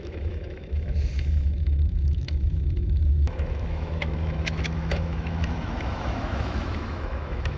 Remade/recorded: remade